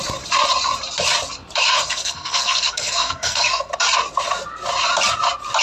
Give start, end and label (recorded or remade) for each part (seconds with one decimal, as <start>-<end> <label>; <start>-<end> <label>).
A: 0.0-1.7 recorded; 1.7-3.7 remade; 3.7-5.6 recorded